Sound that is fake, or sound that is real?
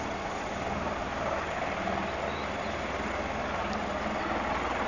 real